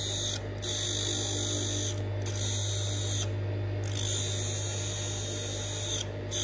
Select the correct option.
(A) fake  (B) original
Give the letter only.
B